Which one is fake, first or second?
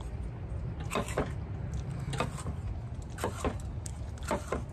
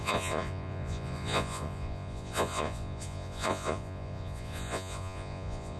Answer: second